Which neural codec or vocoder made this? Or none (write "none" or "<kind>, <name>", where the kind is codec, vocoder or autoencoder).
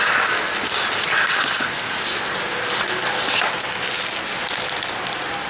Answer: none